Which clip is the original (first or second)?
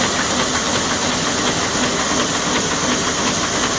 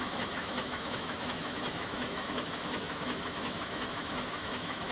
first